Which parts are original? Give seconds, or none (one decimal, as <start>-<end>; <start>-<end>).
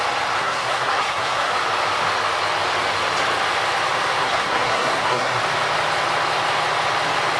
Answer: 0.0-0.4; 1.5-4.2; 5.4-7.4